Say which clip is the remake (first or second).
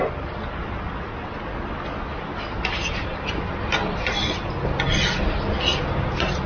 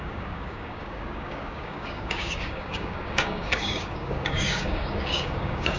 second